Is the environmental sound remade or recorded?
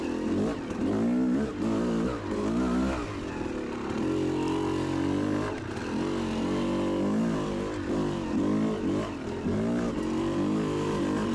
recorded